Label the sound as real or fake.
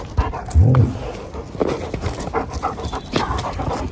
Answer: real